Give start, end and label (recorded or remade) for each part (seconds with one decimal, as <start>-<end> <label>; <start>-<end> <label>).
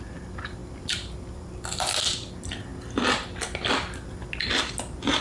0.0-5.2 recorded